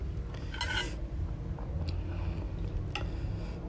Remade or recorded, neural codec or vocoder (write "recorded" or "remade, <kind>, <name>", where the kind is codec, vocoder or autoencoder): recorded